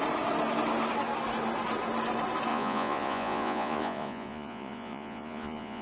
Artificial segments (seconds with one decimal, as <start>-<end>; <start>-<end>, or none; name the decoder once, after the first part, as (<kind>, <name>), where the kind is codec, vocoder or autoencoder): 2.5-5.8 (vocoder, Vocos)